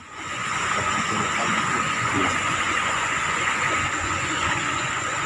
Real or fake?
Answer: fake